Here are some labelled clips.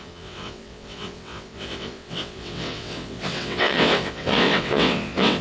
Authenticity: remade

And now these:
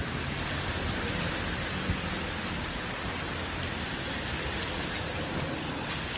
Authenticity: recorded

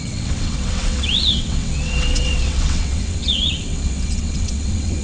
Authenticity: remade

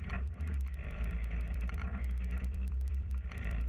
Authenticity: remade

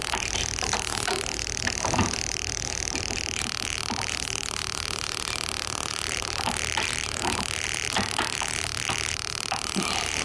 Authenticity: recorded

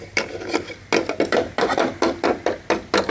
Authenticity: recorded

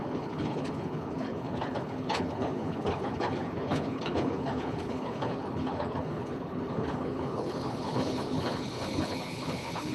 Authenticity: remade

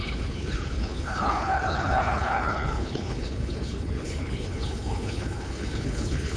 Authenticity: remade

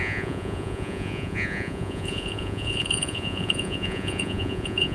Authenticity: remade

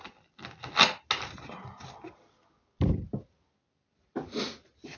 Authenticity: recorded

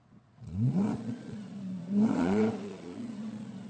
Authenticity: remade